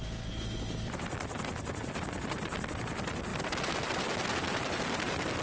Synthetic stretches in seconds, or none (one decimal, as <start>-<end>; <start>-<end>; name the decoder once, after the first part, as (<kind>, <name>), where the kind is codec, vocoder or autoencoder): none